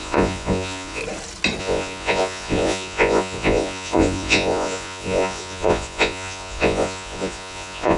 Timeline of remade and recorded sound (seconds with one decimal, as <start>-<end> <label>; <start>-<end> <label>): 0.0-1.0 remade; 1.0-1.6 recorded; 1.6-8.0 remade